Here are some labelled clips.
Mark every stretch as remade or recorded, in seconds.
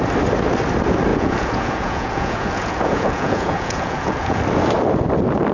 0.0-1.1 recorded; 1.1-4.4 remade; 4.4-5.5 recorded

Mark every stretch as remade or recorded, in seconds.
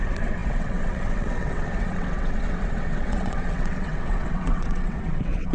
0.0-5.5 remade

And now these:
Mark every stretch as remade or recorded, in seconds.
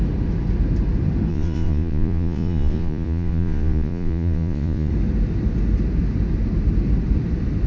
0.0-1.3 recorded; 1.3-4.9 remade; 4.9-7.7 recorded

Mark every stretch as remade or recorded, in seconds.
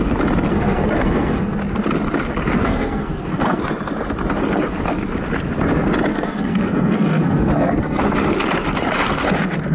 0.0-0.5 recorded; 0.5-1.6 remade; 1.6-2.6 recorded; 2.6-3.6 remade; 3.6-6.1 recorded; 6.1-8.0 remade; 8.0-9.7 recorded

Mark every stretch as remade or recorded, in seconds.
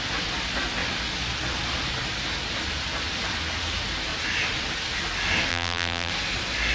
0.0-5.5 recorded; 5.5-6.1 remade; 6.1-6.7 recorded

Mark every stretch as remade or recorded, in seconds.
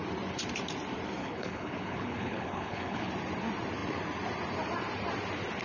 0.0-1.2 recorded; 1.2-3.1 remade; 3.1-5.6 recorded